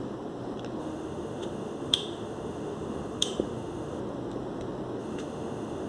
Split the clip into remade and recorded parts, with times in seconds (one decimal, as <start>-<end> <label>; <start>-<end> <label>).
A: 0.0-0.8 recorded; 0.8-4.0 remade; 4.0-5.0 recorded; 5.0-5.9 remade